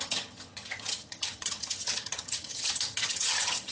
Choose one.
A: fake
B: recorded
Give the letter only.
A